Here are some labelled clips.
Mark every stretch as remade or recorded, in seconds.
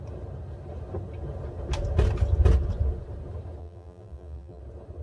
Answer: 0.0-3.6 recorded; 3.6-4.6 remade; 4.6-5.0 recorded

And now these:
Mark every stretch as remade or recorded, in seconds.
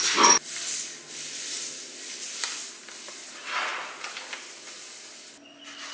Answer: 0.0-5.9 recorded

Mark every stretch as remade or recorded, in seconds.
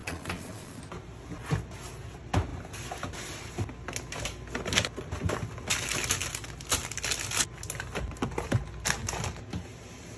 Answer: 0.0-0.8 remade; 0.8-10.2 recorded